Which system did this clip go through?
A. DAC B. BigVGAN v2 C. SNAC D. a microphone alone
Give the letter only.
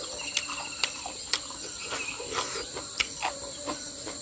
D